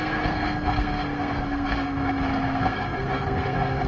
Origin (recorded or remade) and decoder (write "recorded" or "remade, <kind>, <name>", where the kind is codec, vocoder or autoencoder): remade, codec, SNAC